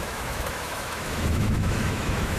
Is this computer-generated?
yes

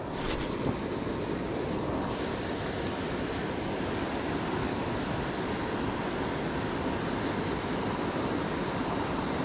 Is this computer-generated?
no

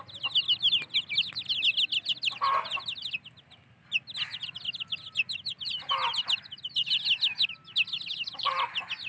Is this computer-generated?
no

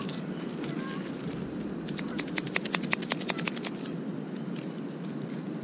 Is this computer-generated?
yes